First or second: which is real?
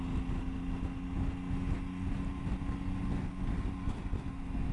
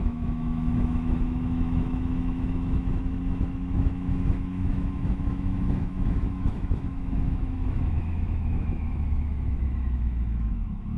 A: first